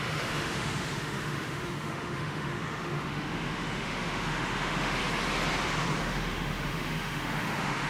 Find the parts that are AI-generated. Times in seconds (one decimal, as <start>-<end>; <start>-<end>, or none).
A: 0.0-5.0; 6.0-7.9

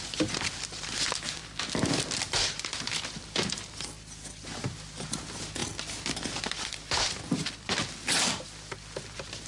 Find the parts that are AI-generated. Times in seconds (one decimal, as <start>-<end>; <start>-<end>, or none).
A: 0.0-1.4; 2.3-5.6; 6.4-9.5

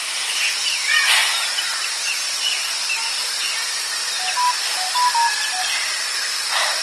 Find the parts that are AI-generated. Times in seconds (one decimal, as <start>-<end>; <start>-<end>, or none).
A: none

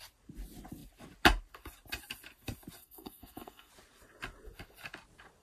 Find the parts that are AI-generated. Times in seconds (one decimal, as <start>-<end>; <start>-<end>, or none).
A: 2.8-3.7